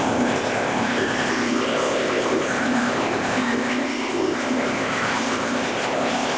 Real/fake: fake